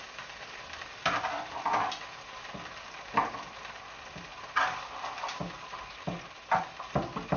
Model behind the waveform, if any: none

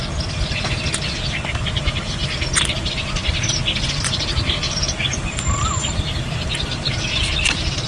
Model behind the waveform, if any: none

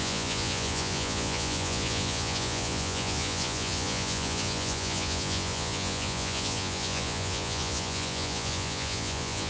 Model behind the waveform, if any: vocoder, Vocos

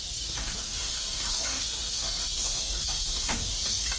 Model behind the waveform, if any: codec, DAC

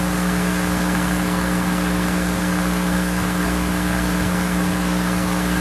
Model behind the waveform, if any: codec, SNAC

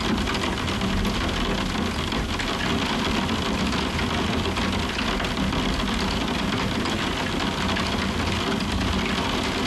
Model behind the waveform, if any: none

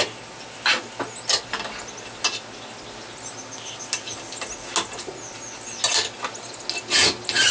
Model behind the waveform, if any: none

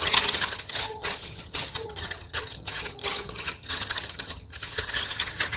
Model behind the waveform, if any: vocoder, HiFi-GAN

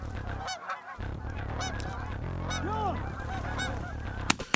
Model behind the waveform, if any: vocoder, BigVGAN v2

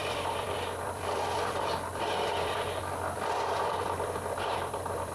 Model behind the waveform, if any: vocoder, BigVGAN v2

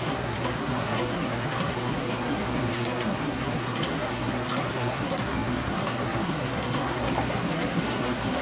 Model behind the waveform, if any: codec, SNAC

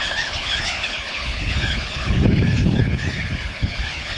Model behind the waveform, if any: codec, HILCodec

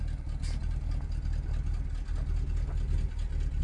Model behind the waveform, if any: none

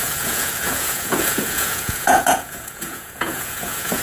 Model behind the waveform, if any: vocoder, Vocos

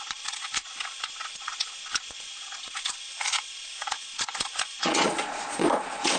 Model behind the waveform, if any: vocoder, Vocos